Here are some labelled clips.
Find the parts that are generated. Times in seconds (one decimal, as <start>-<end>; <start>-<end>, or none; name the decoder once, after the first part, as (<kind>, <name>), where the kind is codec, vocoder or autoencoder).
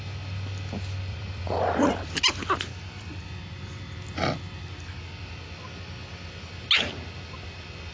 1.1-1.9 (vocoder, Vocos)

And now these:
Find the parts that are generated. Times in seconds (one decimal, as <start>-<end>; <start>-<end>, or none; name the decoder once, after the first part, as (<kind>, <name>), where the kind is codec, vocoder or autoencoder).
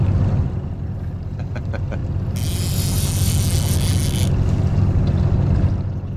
none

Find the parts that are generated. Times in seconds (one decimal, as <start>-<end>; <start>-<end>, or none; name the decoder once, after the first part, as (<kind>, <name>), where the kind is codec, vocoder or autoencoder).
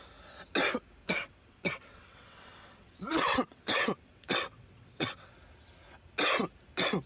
1.0-5.3 (vocoder, WaveNeXt)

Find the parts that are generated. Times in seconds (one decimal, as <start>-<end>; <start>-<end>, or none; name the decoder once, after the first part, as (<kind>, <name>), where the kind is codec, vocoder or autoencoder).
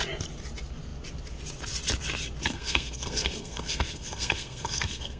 2.4-5.2 (codec, SNAC)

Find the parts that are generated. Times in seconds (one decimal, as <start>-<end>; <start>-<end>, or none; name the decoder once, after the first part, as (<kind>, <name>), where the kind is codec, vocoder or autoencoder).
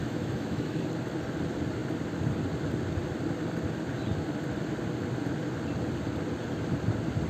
0.0-0.8 (autoencoder, DAC-VAE)